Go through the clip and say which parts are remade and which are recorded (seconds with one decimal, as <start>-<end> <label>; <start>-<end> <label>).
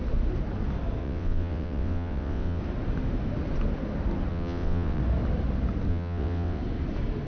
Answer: 0.0-1.0 recorded; 1.0-2.6 remade; 2.6-4.3 recorded; 4.3-5.0 remade; 5.0-5.9 recorded; 5.9-6.6 remade; 6.6-7.3 recorded